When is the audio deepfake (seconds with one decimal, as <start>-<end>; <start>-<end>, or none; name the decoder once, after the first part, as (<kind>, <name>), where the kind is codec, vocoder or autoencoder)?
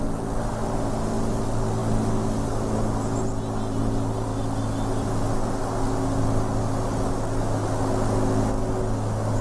none